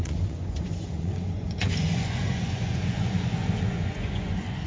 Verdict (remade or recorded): remade